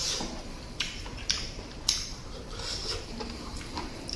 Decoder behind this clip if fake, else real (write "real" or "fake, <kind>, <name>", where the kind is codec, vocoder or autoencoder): fake, vocoder, BigVGAN v2